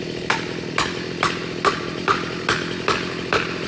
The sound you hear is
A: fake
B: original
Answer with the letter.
B